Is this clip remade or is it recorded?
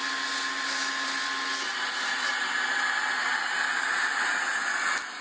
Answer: recorded